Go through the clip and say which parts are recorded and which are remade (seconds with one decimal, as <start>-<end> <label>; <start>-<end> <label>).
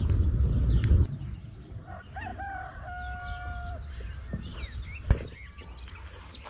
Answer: 0.0-6.5 recorded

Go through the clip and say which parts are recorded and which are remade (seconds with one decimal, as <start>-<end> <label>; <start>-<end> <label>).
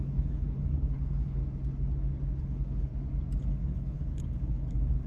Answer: 0.0-1.4 remade; 1.4-2.4 recorded; 2.4-2.9 remade; 2.9-3.4 recorded; 3.4-5.1 remade